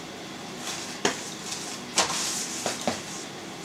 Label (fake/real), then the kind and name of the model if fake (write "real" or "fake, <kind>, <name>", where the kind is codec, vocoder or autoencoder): real